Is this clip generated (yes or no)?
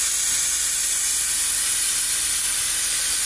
no